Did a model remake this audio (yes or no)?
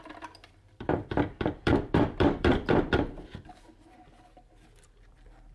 yes